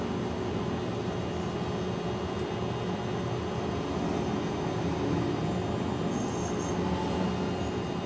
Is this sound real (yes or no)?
yes